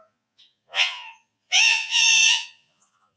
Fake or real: fake